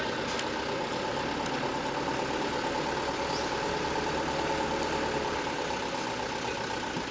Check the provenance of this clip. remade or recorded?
recorded